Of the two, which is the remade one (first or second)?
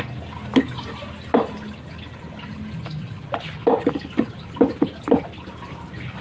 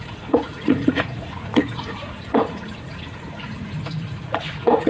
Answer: second